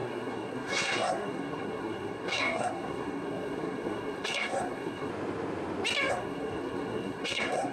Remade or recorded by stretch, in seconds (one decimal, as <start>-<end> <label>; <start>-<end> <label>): 0.0-5.1 remade; 5.1-6.1 recorded; 6.1-7.7 remade